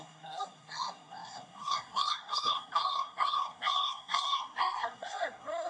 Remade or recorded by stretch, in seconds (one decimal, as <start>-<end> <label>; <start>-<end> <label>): 0.0-5.7 remade